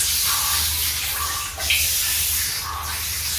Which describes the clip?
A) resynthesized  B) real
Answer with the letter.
B